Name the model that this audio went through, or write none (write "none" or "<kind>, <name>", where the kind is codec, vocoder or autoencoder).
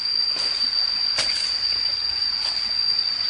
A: none